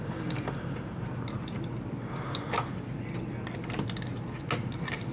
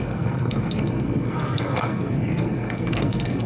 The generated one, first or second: second